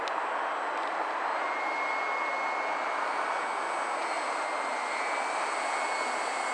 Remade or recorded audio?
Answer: recorded